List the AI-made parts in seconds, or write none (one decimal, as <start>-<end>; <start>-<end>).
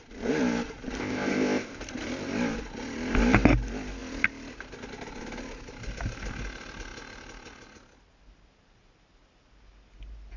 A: 1.0-1.8